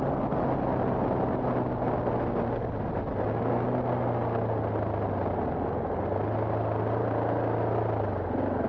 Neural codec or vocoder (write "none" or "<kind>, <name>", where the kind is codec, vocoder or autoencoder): none